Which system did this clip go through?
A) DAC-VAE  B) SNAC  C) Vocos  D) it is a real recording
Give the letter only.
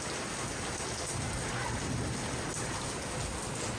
D